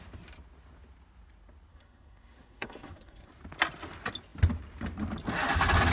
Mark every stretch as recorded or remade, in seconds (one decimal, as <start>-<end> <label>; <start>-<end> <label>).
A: 0.0-1.7 recorded; 1.7-3.3 remade; 3.3-5.9 recorded

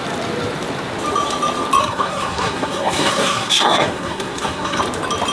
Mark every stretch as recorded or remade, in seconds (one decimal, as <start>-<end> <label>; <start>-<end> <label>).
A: 0.0-1.8 recorded; 1.8-4.8 remade; 4.8-5.3 recorded

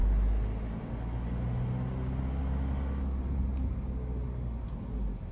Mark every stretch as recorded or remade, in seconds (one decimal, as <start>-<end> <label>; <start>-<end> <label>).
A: 0.0-5.3 recorded